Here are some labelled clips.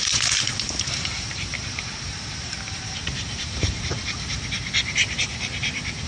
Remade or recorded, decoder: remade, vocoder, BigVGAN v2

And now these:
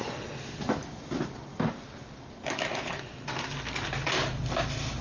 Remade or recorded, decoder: recorded